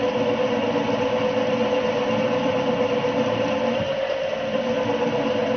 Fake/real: real